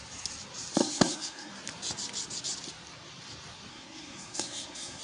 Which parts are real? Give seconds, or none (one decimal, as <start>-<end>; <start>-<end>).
0.0-0.8; 1.5-3.7